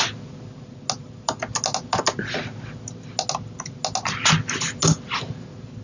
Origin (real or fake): real